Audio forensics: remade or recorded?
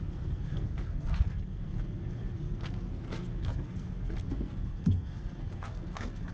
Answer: remade